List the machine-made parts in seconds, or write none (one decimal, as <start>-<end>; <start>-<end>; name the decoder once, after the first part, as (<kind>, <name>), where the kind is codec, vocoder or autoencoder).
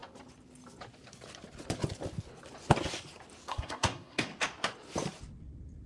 3.5-4.3 (codec, SNAC)